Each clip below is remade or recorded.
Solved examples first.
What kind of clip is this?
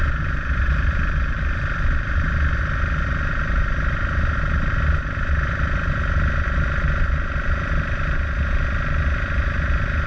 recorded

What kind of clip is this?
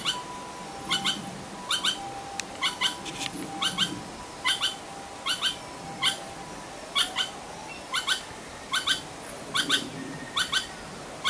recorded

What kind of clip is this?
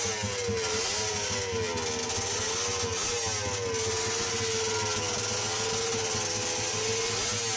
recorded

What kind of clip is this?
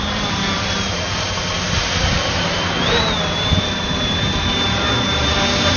remade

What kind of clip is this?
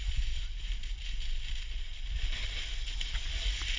recorded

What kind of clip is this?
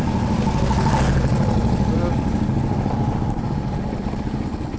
recorded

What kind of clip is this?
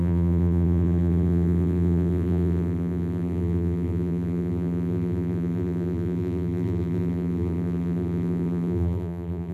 remade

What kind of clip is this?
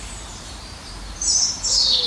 remade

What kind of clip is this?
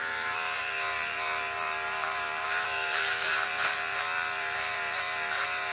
remade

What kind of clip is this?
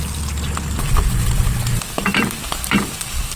recorded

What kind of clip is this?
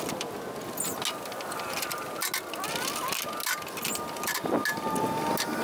recorded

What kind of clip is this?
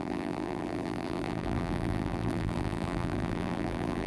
remade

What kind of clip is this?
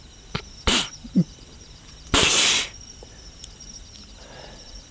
remade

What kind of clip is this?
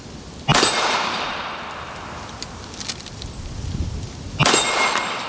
remade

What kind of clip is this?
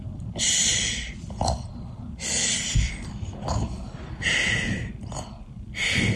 remade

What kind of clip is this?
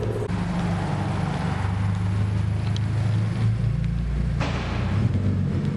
recorded